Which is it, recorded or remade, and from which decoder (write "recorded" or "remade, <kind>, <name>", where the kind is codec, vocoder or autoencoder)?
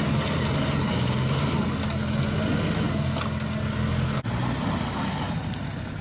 recorded